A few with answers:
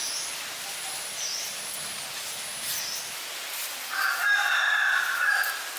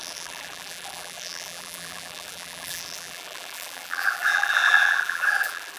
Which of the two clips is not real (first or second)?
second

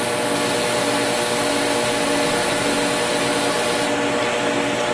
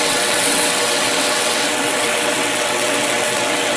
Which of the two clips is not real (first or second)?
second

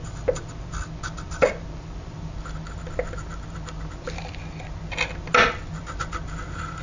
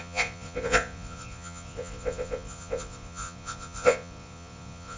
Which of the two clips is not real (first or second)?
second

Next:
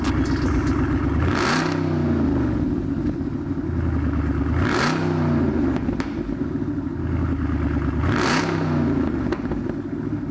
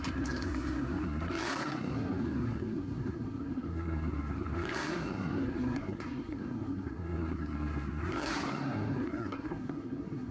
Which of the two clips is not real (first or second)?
second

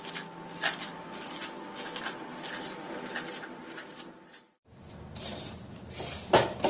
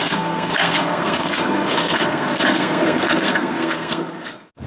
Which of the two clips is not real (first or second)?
second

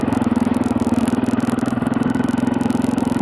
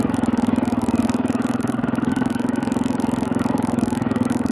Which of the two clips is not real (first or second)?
second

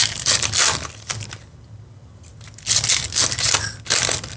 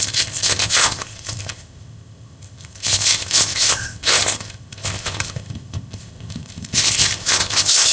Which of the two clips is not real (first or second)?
second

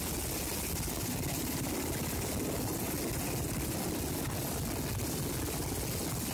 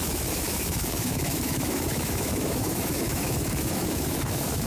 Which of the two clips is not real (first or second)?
second